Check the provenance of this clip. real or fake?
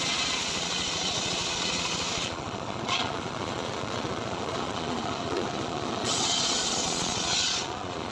fake